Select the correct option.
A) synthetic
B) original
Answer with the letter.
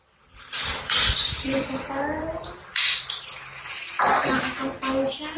B